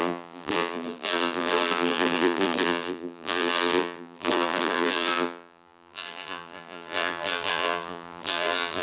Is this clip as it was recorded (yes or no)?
no